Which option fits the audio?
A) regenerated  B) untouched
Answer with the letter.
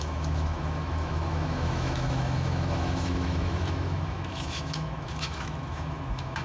A